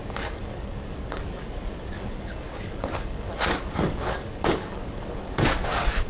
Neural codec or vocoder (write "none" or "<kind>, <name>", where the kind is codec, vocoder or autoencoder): codec, DAC